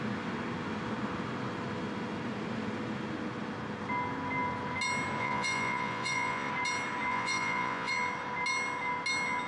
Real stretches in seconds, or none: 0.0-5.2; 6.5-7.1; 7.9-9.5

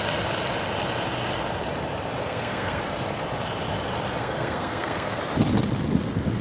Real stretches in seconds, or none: 0.0-2.2; 2.8-4.2; 5.2-6.4

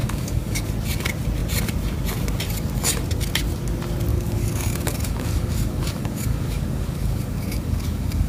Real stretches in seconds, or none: 0.7-4.1

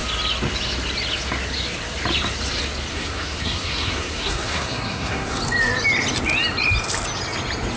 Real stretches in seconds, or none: 0.0-2.9; 5.4-7.8

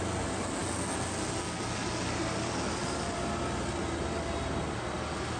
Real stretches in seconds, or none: 0.0-5.4

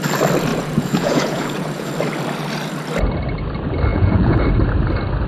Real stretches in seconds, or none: 0.0-0.5; 1.9-3.9; 4.4-5.3

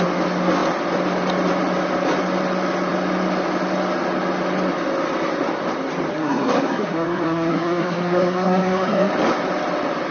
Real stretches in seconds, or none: 0.0-6.1; 9.1-10.1